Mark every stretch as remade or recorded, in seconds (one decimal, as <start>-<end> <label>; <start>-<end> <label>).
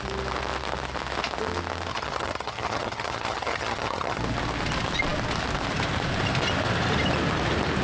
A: 0.0-1.9 recorded; 1.9-4.2 remade; 4.2-7.8 recorded